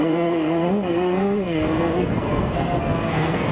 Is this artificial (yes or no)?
yes